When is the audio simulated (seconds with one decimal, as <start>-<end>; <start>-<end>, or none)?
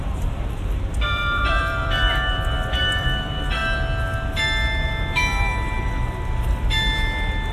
0.0-3.6